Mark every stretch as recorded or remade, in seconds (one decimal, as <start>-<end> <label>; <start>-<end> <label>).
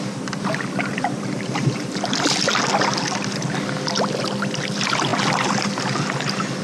0.0-0.9 recorded; 0.9-1.9 remade; 1.9-6.6 recorded